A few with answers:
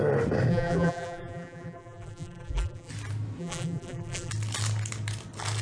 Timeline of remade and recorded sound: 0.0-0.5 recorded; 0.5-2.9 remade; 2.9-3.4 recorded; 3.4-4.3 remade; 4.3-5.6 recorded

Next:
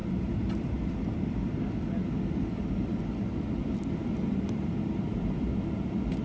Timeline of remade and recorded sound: 0.0-6.2 remade

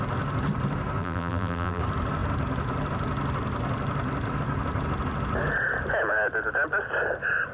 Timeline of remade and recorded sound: 0.0-1.0 recorded; 1.0-1.8 remade; 1.8-7.5 recorded

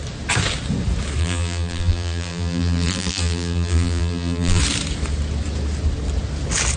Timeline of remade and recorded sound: 0.0-1.2 recorded; 1.2-4.6 remade; 4.6-6.8 recorded

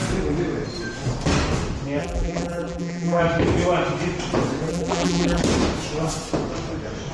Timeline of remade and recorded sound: 0.0-2.0 recorded; 2.0-3.2 remade; 3.2-4.7 recorded; 4.7-5.4 remade; 5.4-7.1 recorded

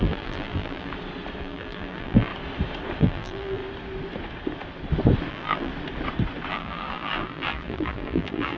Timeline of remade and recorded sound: 0.0-0.9 remade; 0.9-1.4 recorded; 1.4-2.3 remade; 2.3-3.0 recorded; 3.0-3.6 remade; 3.6-5.3 recorded; 5.3-5.7 remade; 5.7-6.5 recorded; 6.5-8.6 remade

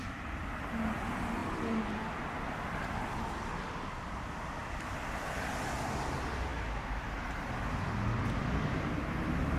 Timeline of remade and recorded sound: 0.0-1.4 recorded; 1.4-3.1 remade; 3.1-4.6 recorded; 4.6-5.4 remade; 5.4-9.6 recorded